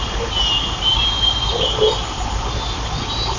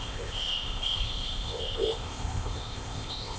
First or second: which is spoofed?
second